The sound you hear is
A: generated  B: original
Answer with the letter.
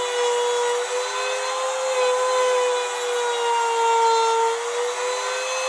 B